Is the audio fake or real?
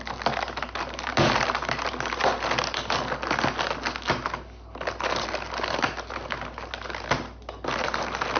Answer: real